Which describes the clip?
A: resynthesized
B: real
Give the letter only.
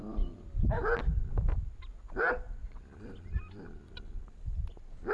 B